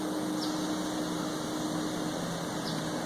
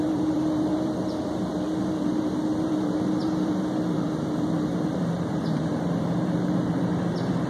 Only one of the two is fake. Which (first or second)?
second